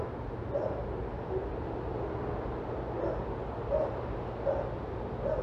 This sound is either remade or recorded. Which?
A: recorded